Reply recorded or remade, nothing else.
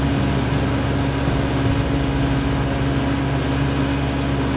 recorded